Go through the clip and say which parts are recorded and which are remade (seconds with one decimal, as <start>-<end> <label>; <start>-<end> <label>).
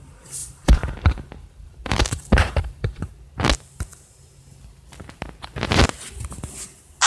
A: 0.0-0.4 recorded; 0.4-3.1 remade; 3.1-7.1 recorded